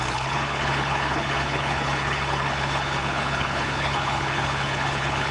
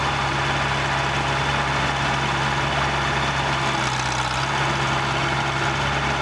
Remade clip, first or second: first